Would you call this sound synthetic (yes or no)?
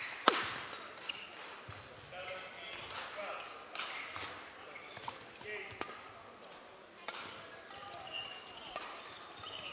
no